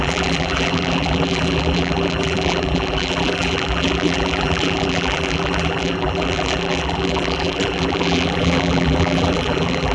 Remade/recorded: remade